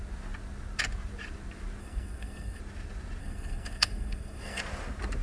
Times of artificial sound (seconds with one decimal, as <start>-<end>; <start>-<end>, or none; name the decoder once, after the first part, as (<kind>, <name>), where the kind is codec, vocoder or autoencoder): 1.8-2.6 (codec, SNAC); 3.2-4.6